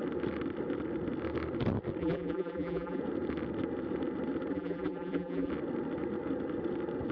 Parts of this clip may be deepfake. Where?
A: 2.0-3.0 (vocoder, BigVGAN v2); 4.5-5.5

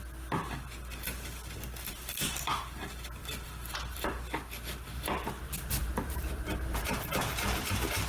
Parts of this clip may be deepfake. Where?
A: 3.2-3.8 (vocoder, BigVGAN v2); 5.8-7.3

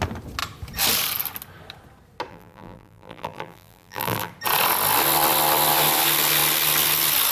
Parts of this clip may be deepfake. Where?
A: 2.3-4.3 (vocoder, BigVGAN v2)

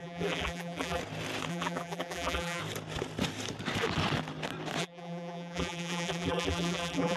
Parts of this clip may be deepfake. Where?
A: 0.0-1.0 (vocoder, BigVGAN v2); 1.5-2.6; 4.8-7.2

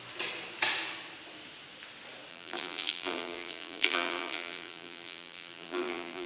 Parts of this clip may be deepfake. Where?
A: 2.3-6.3 (vocoder, BigVGAN v2)